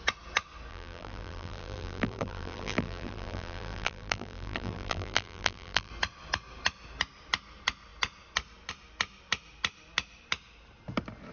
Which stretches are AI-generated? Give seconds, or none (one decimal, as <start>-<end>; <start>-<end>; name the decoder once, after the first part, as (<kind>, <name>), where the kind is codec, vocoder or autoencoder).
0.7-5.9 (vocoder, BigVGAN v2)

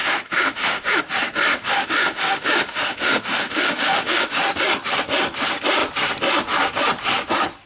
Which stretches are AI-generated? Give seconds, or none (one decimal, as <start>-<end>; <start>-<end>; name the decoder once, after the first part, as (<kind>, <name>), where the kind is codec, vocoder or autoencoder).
0.0-1.0 (autoencoder, DAC-VAE); 1.5-4.4

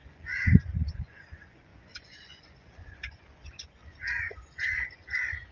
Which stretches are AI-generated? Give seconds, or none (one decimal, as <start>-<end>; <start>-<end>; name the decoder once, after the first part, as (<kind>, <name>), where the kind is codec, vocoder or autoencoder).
0.0-5.5 (vocoder, Vocos)

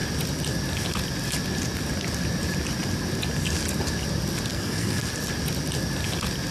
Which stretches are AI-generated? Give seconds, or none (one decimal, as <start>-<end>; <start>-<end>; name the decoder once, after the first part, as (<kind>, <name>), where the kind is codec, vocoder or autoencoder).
4.5-5.0 (codec, SNAC)

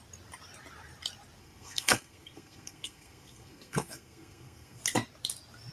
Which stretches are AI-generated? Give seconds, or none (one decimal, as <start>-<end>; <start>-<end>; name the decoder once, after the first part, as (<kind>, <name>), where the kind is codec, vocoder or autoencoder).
1.4-4.8 (codec, SNAC)